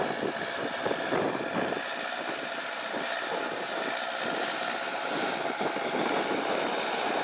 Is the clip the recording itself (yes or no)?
yes